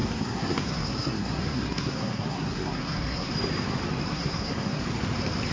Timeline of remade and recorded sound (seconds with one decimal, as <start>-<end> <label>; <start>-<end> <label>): 0.0-3.3 remade; 3.3-4.1 recorded; 4.1-4.8 remade; 4.8-5.5 recorded